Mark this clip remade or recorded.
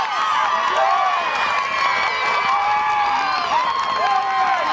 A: recorded